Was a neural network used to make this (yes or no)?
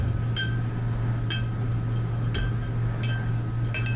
no